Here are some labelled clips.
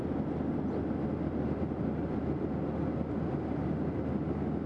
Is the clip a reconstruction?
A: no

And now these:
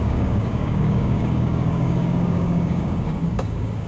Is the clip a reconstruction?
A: yes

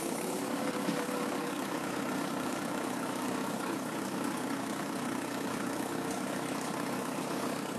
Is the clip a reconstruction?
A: yes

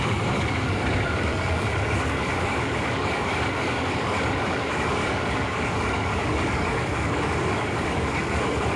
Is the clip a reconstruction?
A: yes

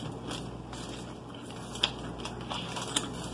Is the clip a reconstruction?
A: no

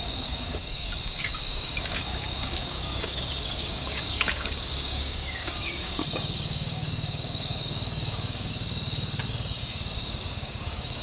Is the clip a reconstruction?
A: yes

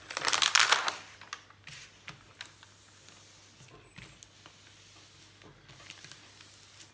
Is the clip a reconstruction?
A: no